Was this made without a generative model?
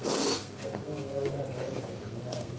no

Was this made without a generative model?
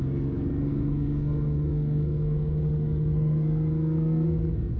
no